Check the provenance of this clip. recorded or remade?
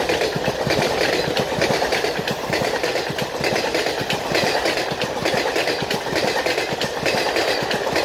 remade